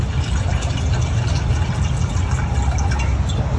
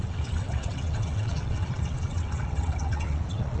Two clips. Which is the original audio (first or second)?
first